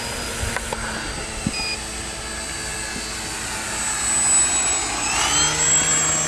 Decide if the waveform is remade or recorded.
recorded